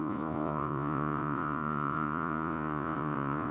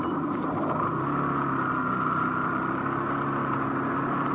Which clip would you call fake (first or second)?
first